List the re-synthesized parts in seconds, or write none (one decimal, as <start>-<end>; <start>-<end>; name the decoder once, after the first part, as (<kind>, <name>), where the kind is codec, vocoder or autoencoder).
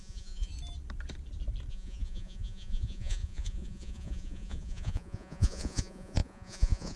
0.0-0.5 (vocoder, Vocos); 1.7-7.0